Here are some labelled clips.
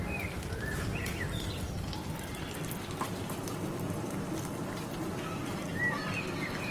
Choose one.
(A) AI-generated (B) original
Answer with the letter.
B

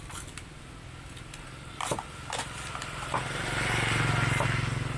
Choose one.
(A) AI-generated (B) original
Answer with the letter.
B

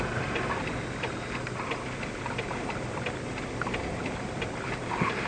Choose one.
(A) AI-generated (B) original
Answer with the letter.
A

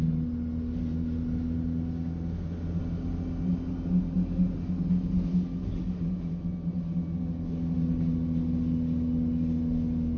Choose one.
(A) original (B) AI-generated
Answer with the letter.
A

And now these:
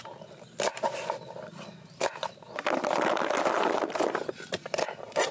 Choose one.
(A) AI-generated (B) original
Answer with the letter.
B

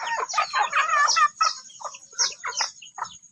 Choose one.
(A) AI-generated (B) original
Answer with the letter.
B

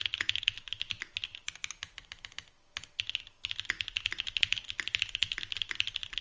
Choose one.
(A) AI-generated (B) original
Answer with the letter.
B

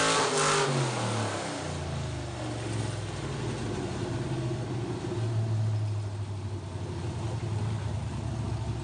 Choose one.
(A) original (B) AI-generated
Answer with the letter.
A